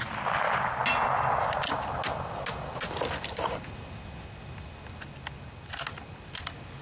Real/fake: real